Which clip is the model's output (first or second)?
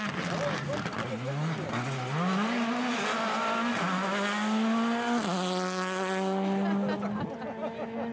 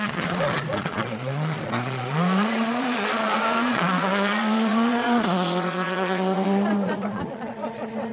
second